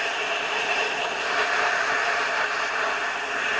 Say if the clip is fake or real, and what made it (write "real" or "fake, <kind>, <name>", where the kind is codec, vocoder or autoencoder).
fake, vocoder, BigVGAN v2